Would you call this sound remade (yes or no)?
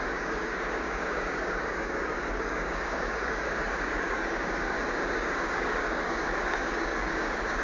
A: yes